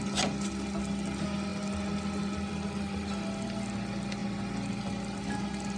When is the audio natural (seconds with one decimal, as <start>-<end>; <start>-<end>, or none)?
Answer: 0.0-5.8